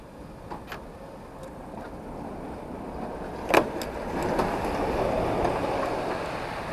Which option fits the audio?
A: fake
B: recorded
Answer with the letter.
B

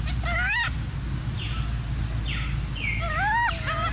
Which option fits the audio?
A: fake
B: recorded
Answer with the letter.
B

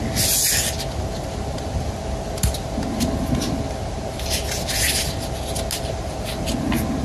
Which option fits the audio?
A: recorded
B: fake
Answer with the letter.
A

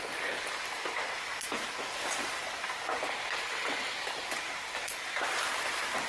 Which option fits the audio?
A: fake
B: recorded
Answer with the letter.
B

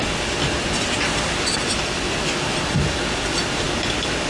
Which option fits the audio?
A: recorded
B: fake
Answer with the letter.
A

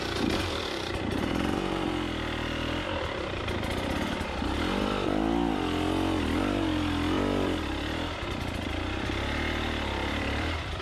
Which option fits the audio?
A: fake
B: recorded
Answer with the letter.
A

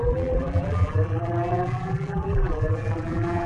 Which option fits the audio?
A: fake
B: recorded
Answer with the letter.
A